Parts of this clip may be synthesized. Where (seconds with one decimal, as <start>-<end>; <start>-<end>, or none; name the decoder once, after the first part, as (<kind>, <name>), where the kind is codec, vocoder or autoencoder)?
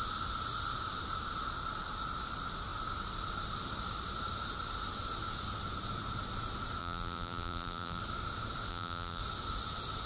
6.8-8.0 (vocoder, BigVGAN v2); 8.7-9.2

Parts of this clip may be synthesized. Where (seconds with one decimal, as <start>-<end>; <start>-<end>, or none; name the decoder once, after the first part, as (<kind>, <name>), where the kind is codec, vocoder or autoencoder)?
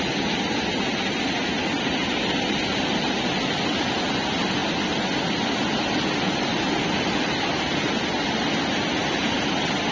none